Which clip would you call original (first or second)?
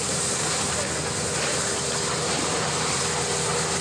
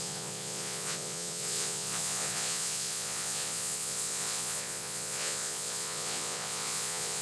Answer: first